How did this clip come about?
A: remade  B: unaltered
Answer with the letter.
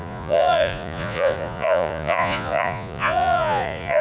A